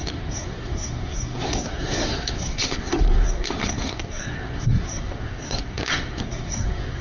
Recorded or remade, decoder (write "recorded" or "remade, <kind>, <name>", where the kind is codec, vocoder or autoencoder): remade, codec, SNAC